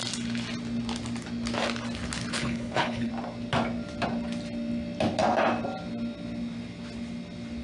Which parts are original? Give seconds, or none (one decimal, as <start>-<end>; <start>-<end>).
0.0-2.3; 3.1-7.6